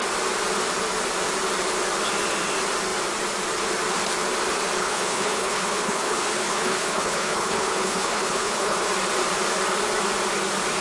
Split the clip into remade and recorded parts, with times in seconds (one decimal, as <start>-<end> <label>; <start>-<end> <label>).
0.0-4.8 recorded; 4.8-8.9 remade; 8.9-10.8 recorded